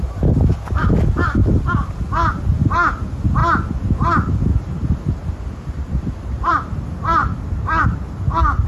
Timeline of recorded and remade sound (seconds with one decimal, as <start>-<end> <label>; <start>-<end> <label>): 0.0-7.2 recorded; 7.2-7.8 remade; 7.8-8.7 recorded